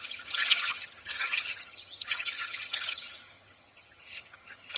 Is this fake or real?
fake